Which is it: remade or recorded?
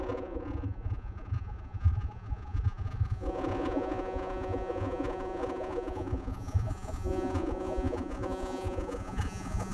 remade